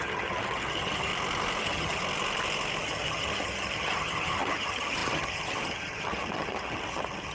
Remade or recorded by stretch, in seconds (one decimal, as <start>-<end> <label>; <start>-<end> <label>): 0.0-1.1 remade; 1.1-1.6 recorded; 1.6-2.0 remade; 2.0-2.8 recorded; 2.8-7.3 remade